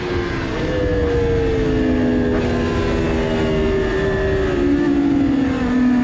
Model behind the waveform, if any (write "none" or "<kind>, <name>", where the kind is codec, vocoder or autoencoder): none